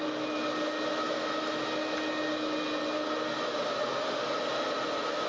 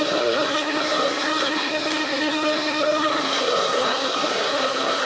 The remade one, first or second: second